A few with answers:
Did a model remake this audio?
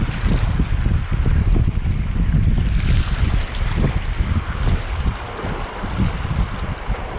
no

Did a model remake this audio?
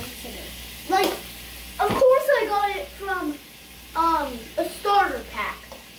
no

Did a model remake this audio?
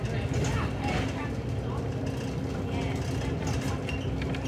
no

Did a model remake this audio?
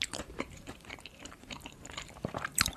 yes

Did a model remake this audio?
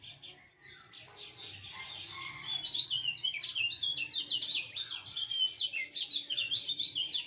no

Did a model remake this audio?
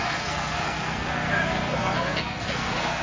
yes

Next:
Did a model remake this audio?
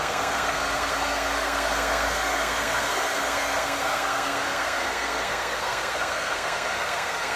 yes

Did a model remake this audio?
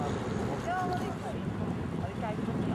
no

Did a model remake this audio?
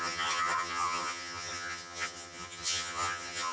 yes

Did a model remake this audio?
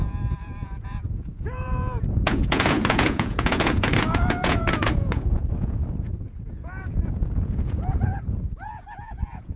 yes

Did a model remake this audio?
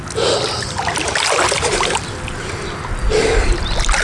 no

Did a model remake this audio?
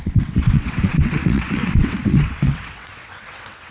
yes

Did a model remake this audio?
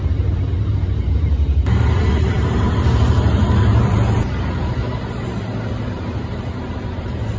yes